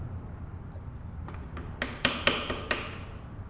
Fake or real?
real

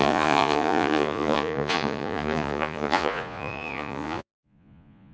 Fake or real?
fake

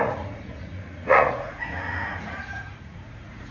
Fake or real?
fake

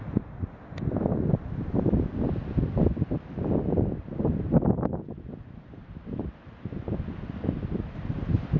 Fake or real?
real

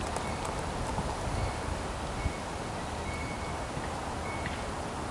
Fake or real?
real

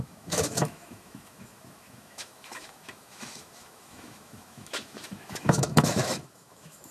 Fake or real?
fake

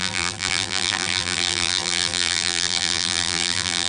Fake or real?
fake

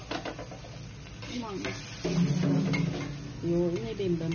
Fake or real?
real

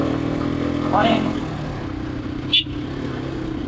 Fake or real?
real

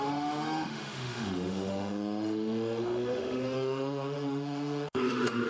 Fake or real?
fake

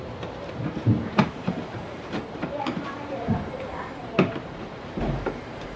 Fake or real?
fake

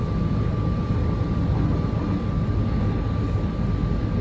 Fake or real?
real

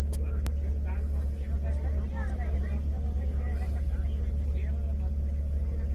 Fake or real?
real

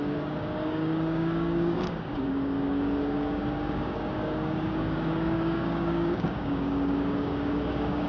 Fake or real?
fake